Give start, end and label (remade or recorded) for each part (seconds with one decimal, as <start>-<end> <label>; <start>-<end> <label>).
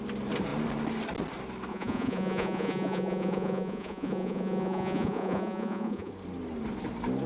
0.0-1.7 recorded; 1.7-6.1 remade; 6.1-7.3 recorded